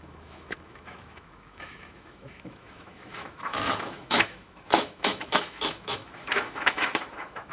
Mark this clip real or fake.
fake